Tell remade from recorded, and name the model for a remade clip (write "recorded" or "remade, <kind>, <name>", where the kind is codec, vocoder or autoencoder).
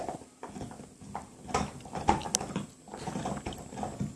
recorded